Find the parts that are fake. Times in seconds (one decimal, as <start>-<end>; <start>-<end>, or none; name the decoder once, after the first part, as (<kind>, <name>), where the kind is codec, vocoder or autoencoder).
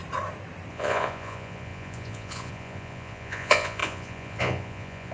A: 0.7-5.1 (vocoder, Vocos)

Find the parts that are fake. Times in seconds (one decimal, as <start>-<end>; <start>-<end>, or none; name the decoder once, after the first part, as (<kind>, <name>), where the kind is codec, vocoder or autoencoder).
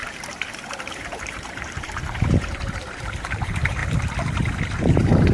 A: 0.0-3.8 (vocoder, BigVGAN v2); 4.8-5.3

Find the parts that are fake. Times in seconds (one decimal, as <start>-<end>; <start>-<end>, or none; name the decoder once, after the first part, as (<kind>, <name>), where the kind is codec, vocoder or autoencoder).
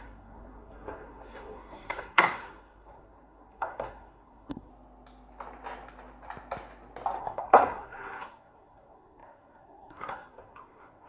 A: 0.0-4.7 (codec, SNAC); 7.2-11.1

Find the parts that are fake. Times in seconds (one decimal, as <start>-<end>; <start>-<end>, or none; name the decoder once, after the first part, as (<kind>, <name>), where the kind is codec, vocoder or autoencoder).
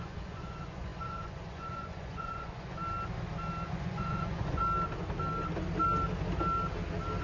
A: 0.0-2.8 (vocoder, Vocos); 3.7-4.6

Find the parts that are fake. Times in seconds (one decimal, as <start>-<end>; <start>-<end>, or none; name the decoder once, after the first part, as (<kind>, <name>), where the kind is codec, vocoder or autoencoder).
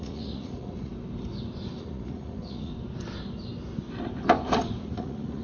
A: 0.0-0.9 (vocoder, Vocos); 1.8-2.7; 4.8-5.4